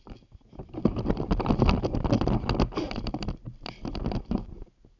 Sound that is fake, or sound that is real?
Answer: real